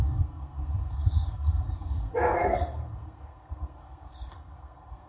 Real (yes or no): no